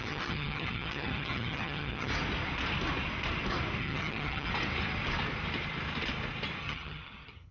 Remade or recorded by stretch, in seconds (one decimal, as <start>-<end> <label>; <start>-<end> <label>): 0.0-2.1 remade; 2.1-3.8 recorded; 3.8-4.5 remade; 4.5-6.6 recorded; 6.6-7.5 remade